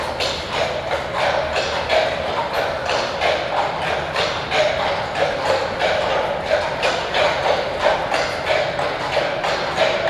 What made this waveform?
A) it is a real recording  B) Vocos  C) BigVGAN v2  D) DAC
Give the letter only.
A